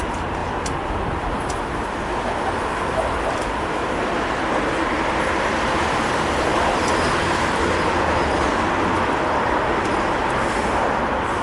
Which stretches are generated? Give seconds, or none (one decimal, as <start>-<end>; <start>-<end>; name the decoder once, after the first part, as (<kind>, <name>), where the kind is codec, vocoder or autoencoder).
none